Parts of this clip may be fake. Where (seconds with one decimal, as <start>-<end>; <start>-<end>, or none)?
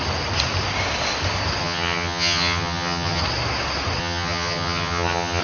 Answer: 1.6-3.2; 4.0-5.4